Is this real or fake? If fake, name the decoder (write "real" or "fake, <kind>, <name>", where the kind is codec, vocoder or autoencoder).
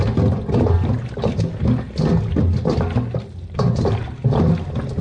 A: real